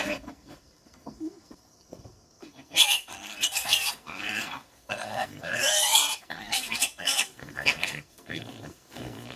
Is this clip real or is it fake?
fake